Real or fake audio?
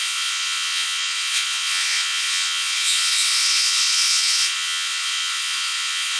fake